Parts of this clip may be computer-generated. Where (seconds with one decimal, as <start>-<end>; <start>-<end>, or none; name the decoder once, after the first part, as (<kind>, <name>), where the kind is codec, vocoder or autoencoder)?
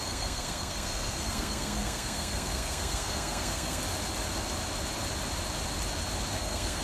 0.0-3.8 (codec, SNAC); 6.3-6.8